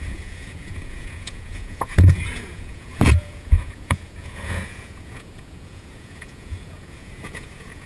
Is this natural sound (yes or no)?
no